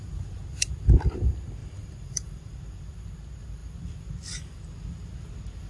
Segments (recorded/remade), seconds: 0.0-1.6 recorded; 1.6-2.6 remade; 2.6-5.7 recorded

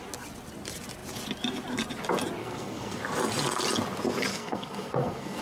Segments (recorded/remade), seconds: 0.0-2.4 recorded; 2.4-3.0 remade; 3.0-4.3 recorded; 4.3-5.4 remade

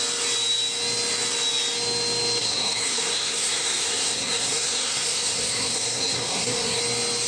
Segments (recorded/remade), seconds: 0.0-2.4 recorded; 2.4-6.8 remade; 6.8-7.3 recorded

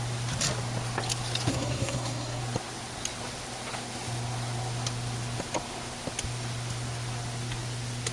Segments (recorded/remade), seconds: 0.0-1.5 recorded; 1.5-2.4 remade; 2.4-8.1 recorded

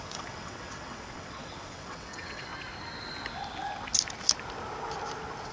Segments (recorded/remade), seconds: 0.0-2.5 remade; 2.5-5.5 recorded

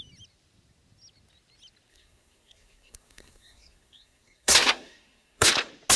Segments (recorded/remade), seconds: 0.0-1.9 recorded; 1.9-5.5 remade; 5.5-6.0 recorded